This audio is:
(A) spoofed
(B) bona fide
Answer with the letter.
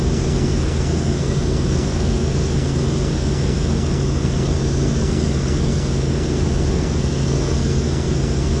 A